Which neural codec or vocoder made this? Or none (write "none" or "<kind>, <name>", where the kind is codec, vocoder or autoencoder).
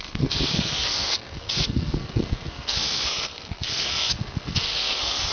codec, SNAC